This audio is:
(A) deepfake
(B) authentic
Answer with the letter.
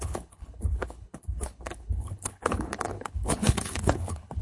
A